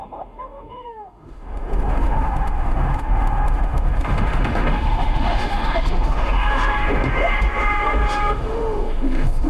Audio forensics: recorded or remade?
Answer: remade